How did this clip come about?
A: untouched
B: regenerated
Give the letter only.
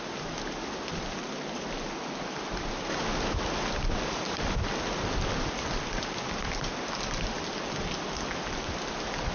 A